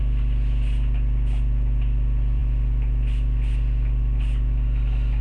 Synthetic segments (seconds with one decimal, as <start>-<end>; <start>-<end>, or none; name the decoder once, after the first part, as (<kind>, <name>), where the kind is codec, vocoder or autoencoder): none